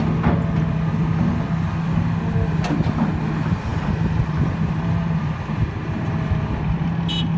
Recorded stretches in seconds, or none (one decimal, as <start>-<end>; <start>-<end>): 0.0-3.7; 6.5-7.4